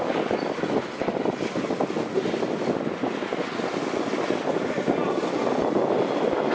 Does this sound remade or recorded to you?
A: recorded